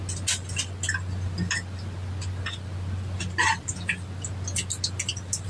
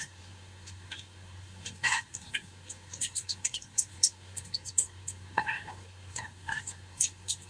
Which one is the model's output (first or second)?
second